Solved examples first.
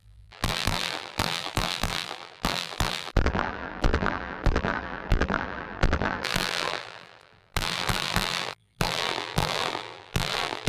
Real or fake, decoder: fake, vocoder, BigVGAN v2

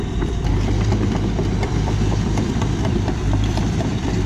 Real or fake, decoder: fake, vocoder, BigVGAN v2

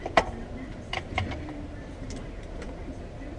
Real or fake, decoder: fake, vocoder, BigVGAN v2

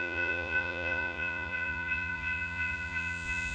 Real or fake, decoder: fake, vocoder, Vocos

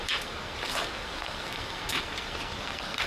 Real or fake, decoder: fake, codec, SNAC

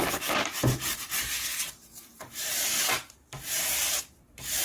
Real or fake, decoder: fake, vocoder, BigVGAN v2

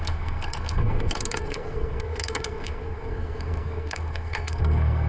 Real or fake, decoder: fake, codec, SNAC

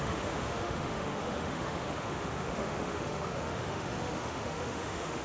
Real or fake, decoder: fake, autoencoder, DAC-VAE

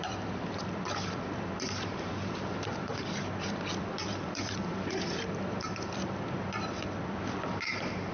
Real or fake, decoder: fake, vocoder, BigVGAN v2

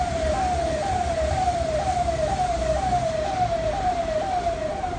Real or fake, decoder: fake, vocoder, BigVGAN v2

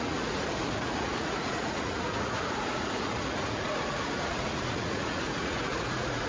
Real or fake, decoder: fake, vocoder, Vocos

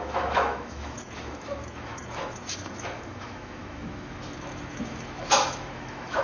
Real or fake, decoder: fake, autoencoder, DAC-VAE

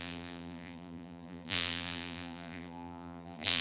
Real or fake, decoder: fake, vocoder, BigVGAN v2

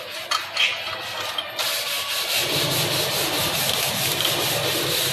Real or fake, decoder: real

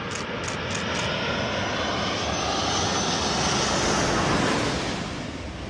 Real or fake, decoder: real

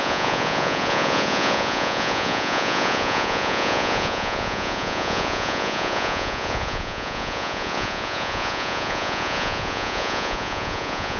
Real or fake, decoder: fake, vocoder, Vocos